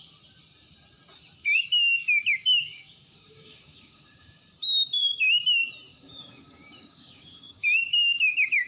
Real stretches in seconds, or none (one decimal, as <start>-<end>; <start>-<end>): 0.0-1.4; 4.4-5.9